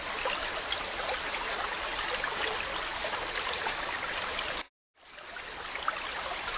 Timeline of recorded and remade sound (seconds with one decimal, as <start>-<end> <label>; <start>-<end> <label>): 0.0-6.6 recorded